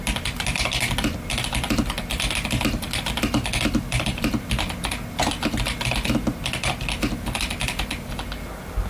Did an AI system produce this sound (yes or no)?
no